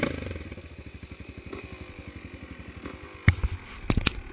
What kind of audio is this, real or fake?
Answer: real